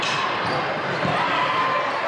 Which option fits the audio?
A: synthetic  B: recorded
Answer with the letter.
A